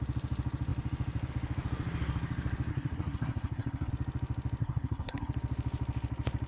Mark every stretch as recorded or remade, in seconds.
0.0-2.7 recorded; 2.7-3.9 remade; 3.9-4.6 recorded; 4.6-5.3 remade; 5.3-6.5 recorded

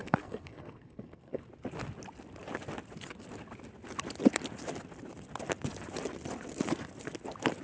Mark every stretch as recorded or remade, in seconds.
0.0-1.4 remade; 1.4-7.6 recorded

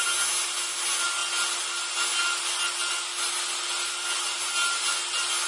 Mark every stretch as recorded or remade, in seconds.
0.0-5.5 recorded

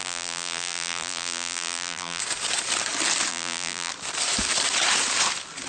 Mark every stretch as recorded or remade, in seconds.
0.0-2.2 remade; 2.2-3.3 recorded; 3.3-3.9 remade; 3.9-5.7 recorded

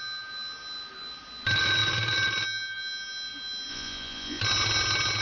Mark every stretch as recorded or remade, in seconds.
0.0-3.7 recorded; 3.7-4.4 remade; 4.4-5.2 recorded

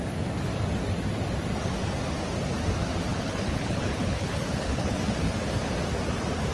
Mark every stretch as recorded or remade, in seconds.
0.0-3.1 recorded; 3.1-5.0 remade; 5.0-6.5 recorded

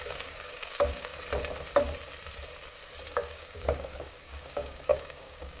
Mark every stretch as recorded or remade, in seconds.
0.0-1.1 remade; 1.1-3.1 recorded; 3.1-5.6 remade